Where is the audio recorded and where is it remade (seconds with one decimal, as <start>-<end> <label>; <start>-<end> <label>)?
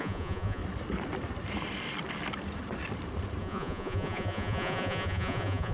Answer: 0.0-0.6 remade; 0.6-3.4 recorded; 3.4-5.7 remade